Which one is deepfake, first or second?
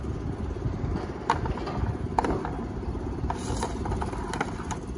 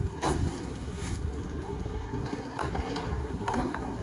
second